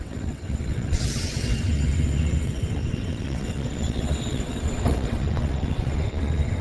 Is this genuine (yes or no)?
no